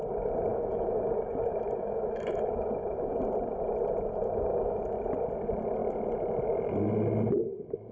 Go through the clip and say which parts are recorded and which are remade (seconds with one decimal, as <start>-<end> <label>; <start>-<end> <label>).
0.0-0.5 recorded; 0.5-1.1 remade; 1.1-1.5 recorded; 1.5-3.2 remade; 3.2-4.2 recorded; 4.2-4.8 remade; 4.8-7.9 recorded